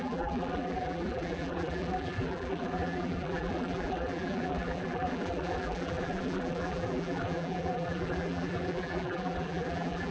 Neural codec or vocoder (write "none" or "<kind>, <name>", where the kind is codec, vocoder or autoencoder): vocoder, BigVGAN v2